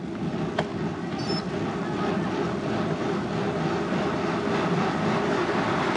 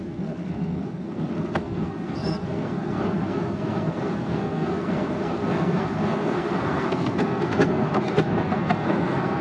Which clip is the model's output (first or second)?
second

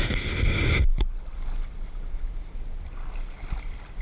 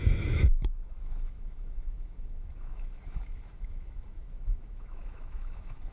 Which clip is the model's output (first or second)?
second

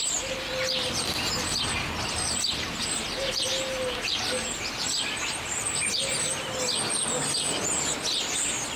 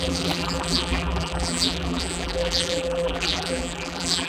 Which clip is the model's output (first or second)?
second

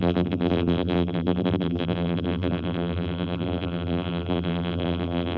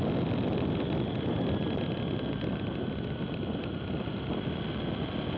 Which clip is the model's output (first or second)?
first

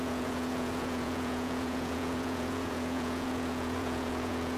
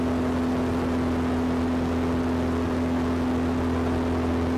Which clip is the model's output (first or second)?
first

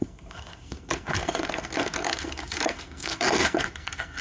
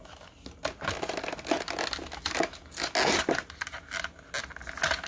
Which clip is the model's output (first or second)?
first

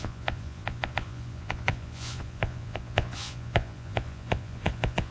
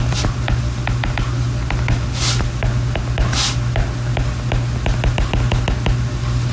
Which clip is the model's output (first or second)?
first